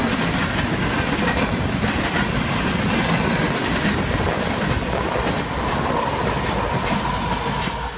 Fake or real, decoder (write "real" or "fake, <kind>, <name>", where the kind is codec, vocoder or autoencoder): real